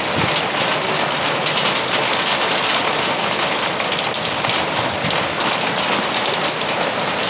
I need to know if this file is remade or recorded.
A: recorded